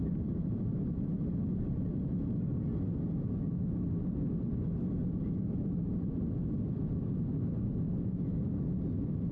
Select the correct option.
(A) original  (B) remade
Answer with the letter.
A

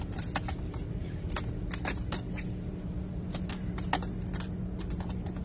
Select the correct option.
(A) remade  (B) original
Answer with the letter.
B